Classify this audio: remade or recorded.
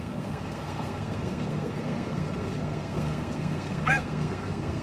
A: remade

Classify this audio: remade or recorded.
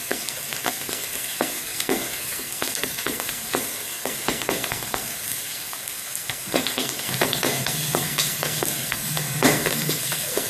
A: remade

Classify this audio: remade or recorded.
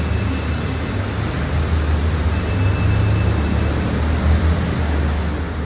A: recorded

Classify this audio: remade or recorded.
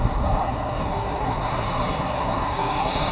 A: remade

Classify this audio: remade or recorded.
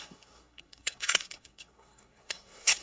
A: remade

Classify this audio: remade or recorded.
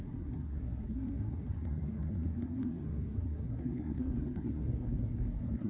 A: remade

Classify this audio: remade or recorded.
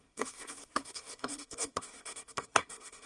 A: remade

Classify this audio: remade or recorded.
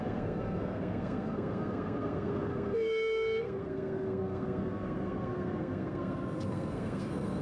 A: remade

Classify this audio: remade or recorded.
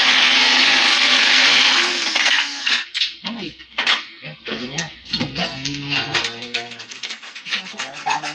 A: remade